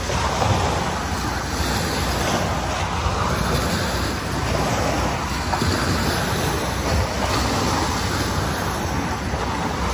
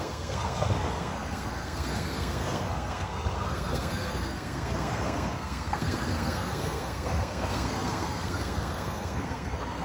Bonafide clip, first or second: first